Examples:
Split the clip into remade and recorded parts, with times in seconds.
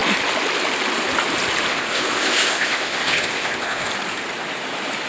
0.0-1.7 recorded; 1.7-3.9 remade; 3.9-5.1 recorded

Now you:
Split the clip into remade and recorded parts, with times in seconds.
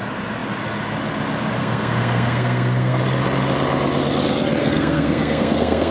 0.0-1.6 recorded; 1.6-3.0 remade; 3.0-4.6 recorded; 4.6-5.9 remade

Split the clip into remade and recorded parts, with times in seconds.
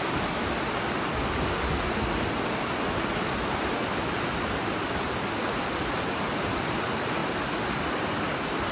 0.0-8.7 recorded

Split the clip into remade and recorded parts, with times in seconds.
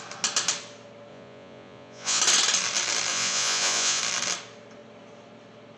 0.0-1.1 recorded; 1.1-2.2 remade; 2.2-3.1 recorded; 3.1-4.0 remade; 4.0-5.8 recorded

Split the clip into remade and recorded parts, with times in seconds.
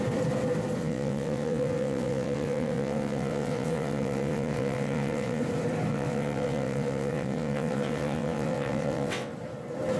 0.0-0.8 recorded; 0.8-5.4 remade; 5.4-5.9 recorded; 5.9-9.3 remade; 9.3-10.0 recorded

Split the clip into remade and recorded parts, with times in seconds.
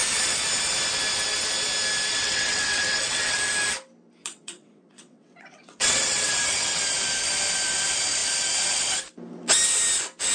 0.0-2.1 recorded; 2.1-3.4 remade; 3.4-4.2 recorded; 4.2-6.8 remade; 6.8-10.3 recorded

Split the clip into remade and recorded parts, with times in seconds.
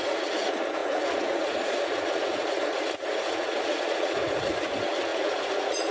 0.0-5.9 remade